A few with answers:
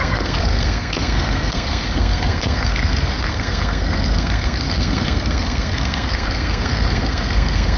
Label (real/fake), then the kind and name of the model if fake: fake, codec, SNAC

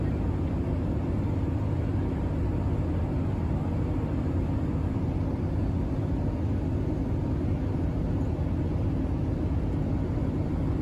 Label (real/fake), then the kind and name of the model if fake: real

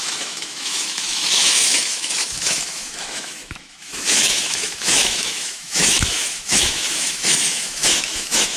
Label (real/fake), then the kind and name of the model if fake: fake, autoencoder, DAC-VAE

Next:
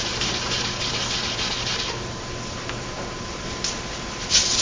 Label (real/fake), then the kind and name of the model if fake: real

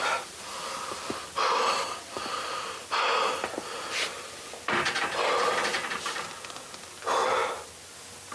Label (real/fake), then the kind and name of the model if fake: real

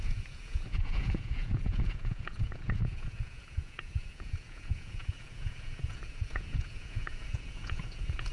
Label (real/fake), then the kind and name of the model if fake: fake, vocoder, Vocos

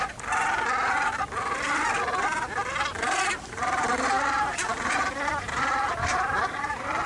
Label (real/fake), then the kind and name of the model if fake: real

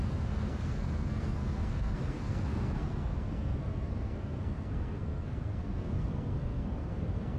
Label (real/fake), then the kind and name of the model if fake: fake, codec, SNAC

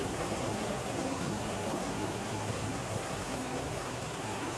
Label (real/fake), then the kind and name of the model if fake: fake, codec, SNAC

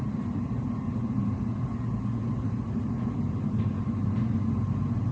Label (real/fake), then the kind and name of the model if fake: real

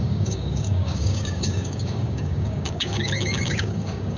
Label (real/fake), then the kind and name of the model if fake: fake, codec, DAC